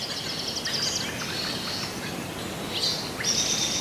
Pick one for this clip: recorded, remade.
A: recorded